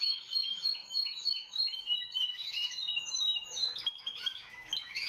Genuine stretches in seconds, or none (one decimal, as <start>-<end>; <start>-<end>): none